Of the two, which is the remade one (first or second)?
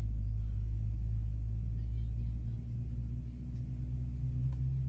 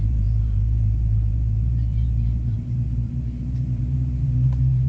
second